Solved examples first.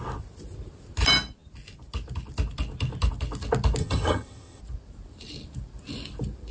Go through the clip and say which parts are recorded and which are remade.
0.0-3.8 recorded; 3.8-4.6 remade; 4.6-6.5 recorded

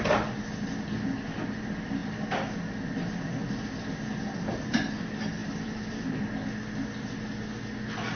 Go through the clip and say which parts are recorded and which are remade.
0.0-2.0 recorded; 2.0-2.7 remade; 2.7-5.4 recorded; 5.4-6.0 remade; 6.0-8.2 recorded